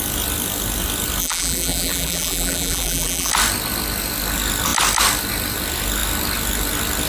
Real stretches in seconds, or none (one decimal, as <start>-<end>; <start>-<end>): 0.0-1.2; 3.3-7.1